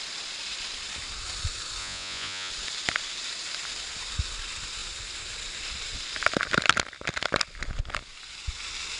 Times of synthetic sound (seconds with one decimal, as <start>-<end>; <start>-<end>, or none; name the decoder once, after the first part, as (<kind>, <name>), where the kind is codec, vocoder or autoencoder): 1.8-2.5 (vocoder, Vocos)